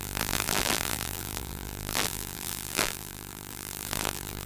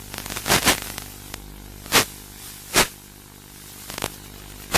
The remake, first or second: first